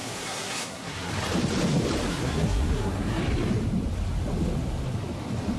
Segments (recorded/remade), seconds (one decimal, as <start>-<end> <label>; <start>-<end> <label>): 0.0-1.1 remade; 1.1-2.1 recorded; 2.1-3.2 remade; 3.2-5.6 recorded

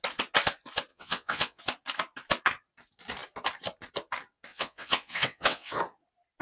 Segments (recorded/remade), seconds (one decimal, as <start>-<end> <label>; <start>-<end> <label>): 0.0-0.9 recorded; 0.9-1.6 remade; 1.6-4.5 recorded; 4.5-5.8 remade; 5.8-6.4 recorded

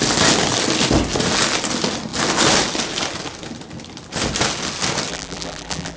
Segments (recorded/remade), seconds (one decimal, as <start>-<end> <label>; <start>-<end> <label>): 0.0-5.1 recorded; 5.1-6.0 remade

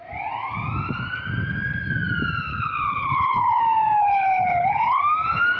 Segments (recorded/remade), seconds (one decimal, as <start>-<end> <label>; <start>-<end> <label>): 0.0-2.5 recorded; 2.5-3.6 remade; 3.6-4.0 recorded; 4.0-5.0 remade; 5.0-5.6 recorded

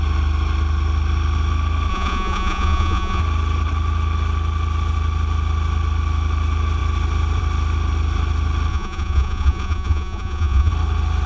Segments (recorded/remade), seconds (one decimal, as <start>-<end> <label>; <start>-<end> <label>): 0.0-1.9 recorded; 1.9-3.2 remade; 3.2-8.7 recorded; 8.7-10.7 remade; 10.7-11.3 recorded

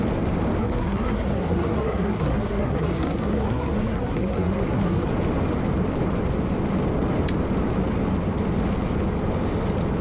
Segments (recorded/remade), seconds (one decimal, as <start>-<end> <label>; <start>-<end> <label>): 0.0-0.6 recorded; 0.6-5.1 remade; 5.1-10.0 recorded

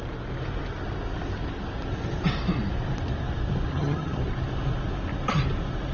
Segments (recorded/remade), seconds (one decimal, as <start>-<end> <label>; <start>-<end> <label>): 0.0-3.7 recorded; 3.7-4.2 remade; 4.2-5.9 recorded